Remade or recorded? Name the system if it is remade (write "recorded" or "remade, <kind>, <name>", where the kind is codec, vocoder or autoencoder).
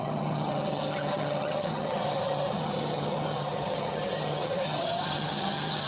remade, vocoder, HiFi-GAN